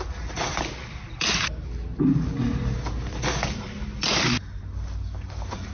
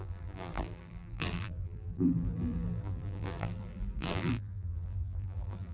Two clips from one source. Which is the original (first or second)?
first